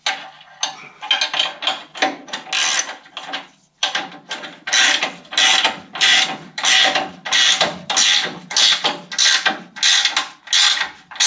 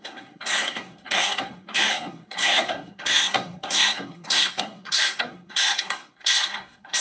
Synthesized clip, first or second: second